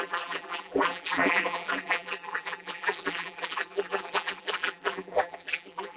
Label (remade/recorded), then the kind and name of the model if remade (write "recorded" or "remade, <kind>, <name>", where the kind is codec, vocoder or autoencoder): remade, vocoder, BigVGAN v2